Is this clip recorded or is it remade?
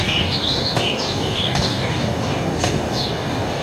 remade